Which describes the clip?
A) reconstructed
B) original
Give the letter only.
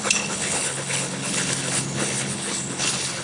A